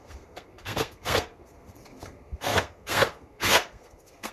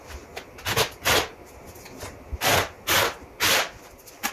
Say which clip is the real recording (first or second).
second